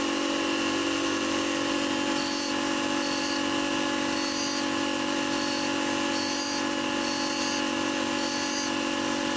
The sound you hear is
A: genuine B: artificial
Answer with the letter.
A